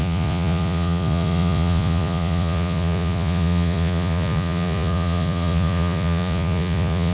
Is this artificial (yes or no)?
yes